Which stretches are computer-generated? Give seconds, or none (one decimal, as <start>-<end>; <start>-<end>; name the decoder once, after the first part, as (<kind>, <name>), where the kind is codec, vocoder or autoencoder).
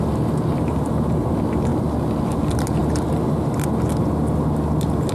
none